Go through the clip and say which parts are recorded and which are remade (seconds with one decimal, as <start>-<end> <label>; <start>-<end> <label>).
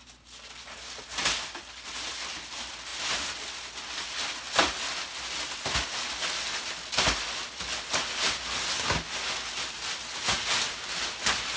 0.0-11.6 recorded